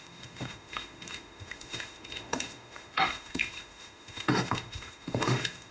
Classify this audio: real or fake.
fake